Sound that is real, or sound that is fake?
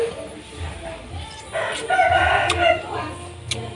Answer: real